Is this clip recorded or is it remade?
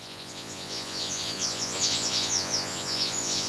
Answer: remade